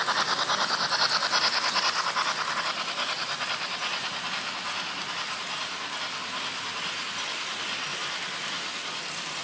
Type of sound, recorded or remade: recorded